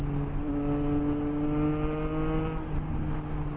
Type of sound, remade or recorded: recorded